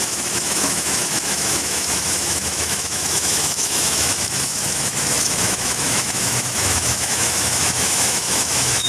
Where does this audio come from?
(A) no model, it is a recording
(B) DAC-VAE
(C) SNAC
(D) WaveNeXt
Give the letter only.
B